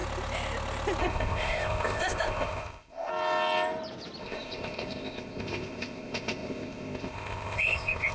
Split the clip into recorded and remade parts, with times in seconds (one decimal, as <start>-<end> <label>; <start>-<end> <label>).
0.0-1.0 recorded; 1.0-3.1 remade; 3.1-4.2 recorded; 4.2-8.1 remade